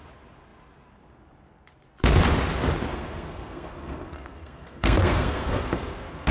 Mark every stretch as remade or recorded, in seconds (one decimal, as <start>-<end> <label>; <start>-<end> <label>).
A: 0.0-2.9 recorded; 2.9-6.3 remade